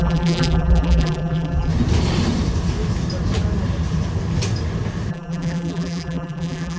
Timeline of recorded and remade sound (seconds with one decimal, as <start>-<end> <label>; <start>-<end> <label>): 0.0-1.7 remade; 1.7-5.1 recorded; 5.1-6.8 remade